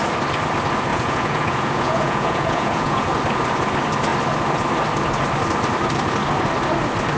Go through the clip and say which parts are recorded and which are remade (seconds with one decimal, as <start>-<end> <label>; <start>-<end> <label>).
0.0-0.9 recorded; 0.9-3.1 remade; 3.1-7.2 recorded